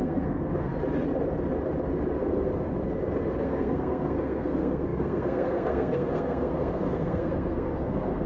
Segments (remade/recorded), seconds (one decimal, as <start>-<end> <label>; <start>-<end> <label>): 0.0-0.7 remade; 0.7-2.2 recorded; 2.2-2.7 remade; 2.7-3.4 recorded; 3.4-8.3 remade